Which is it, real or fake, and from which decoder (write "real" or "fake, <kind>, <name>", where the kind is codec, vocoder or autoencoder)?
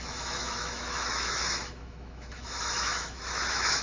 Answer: fake, autoencoder, DAC-VAE